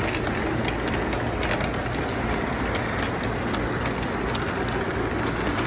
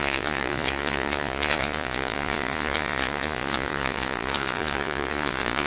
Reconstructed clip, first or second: second